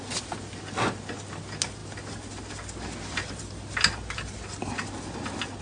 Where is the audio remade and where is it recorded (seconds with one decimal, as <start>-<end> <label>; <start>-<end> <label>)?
0.0-5.6 recorded